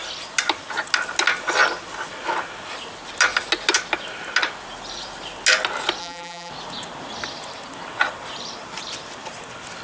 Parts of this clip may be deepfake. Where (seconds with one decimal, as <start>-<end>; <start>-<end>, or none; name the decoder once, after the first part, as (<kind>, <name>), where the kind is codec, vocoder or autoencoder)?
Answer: 6.0-6.5 (vocoder, BigVGAN v2)